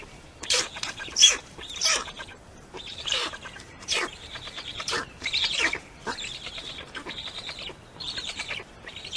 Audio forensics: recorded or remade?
remade